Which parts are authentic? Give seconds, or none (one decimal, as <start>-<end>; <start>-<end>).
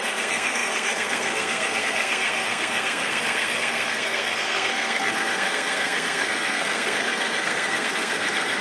none